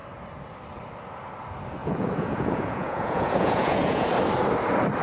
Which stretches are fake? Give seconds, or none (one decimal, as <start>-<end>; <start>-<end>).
1.8-4.1

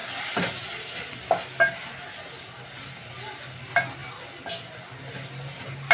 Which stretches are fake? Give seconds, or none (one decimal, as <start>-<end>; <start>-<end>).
none

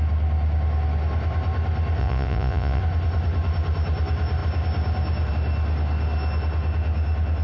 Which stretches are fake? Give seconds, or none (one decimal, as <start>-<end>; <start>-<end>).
2.0-2.8

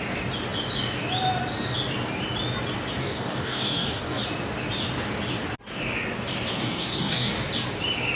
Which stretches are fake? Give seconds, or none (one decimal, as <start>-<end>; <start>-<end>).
3.0-4.2; 6.5-7.5

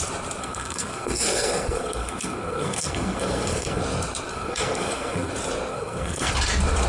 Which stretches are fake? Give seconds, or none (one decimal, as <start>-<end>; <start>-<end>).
0.4-3.8; 4.3-5.3; 5.7-6.3

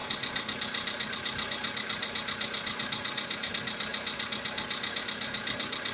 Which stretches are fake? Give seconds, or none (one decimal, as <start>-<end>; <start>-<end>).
none